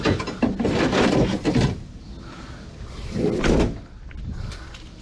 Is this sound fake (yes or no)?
no